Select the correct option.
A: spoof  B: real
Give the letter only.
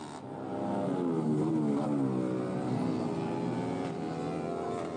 B